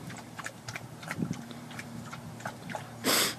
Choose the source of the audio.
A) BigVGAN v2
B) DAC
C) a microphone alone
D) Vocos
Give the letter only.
A